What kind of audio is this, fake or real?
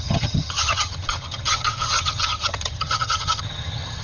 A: fake